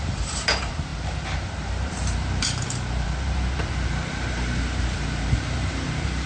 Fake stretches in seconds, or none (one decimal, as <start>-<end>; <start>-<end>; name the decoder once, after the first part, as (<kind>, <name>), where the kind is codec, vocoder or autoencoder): 0.0-6.3 (vocoder, BigVGAN v2)